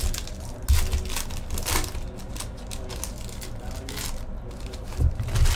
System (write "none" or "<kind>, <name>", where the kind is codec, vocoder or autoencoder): none